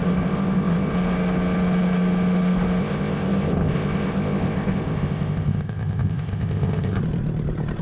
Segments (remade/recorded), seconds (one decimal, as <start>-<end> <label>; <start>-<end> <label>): 0.0-0.9 remade; 0.9-2.8 recorded; 2.8-7.0 remade; 7.0-7.8 recorded